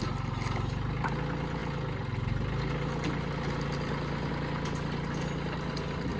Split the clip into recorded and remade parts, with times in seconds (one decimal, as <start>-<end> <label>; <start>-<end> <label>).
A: 0.0-6.2 recorded